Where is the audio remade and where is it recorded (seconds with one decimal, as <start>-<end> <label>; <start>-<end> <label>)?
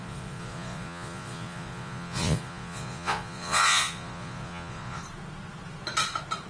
0.0-5.0 remade; 5.0-6.5 recorded